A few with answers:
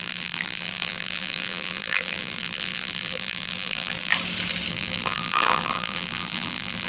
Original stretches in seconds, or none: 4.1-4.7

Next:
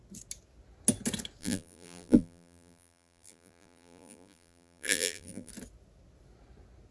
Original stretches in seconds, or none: 0.0-1.4; 5.5-6.9

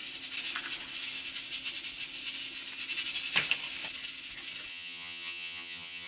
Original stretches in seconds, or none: 0.0-4.7